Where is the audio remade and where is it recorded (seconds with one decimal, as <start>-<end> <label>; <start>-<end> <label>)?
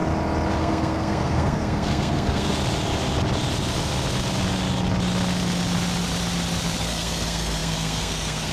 0.0-0.6 recorded; 0.6-2.5 remade; 2.5-6.8 recorded; 6.8-8.5 remade